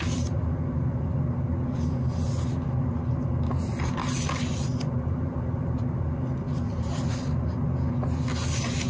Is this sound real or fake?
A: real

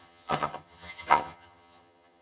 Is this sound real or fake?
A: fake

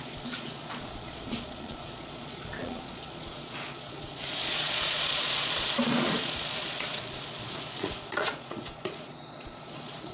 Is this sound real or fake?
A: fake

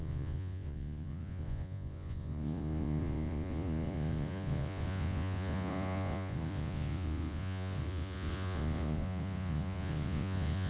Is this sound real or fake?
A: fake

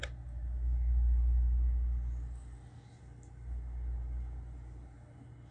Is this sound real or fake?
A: real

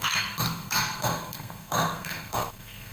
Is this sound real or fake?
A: fake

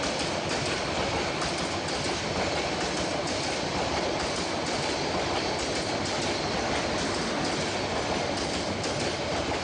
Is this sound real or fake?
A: real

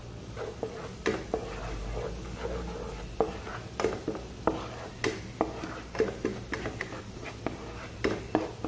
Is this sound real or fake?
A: real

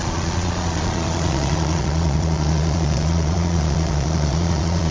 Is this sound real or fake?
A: fake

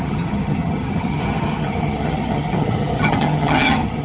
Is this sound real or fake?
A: fake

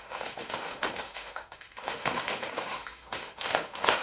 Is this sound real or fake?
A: fake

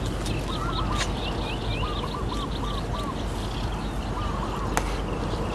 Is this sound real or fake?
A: real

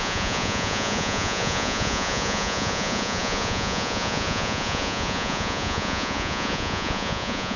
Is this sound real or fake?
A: fake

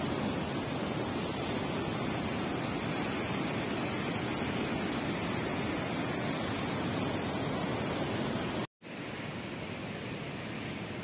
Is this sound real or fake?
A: real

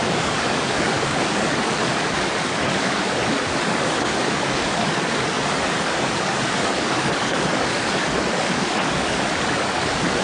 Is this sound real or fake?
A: fake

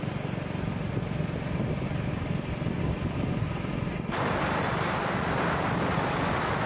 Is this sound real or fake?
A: fake